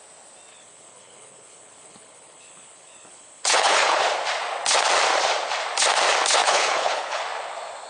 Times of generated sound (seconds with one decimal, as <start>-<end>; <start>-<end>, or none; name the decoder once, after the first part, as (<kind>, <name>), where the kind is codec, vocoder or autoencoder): 0.5-4.0 (codec, HILCodec); 6.4-7.2